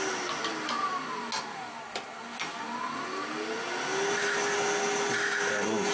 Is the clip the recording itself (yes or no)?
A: yes